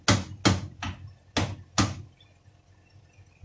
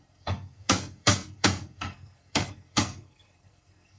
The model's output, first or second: second